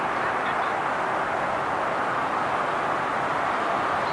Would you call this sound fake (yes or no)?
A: no